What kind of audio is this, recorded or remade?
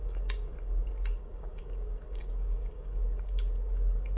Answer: remade